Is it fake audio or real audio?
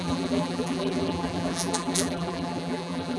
fake